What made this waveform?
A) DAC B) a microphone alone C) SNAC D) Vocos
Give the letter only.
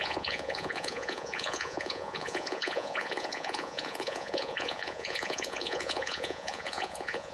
D